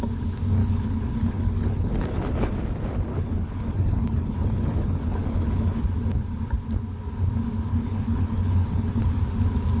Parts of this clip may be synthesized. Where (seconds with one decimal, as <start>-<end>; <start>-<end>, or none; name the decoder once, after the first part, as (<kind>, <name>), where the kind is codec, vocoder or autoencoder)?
0.6-2.6 (codec, HILCodec); 3.1-5.8; 7.7-9.2